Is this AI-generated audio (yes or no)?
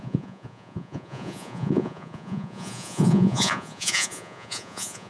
yes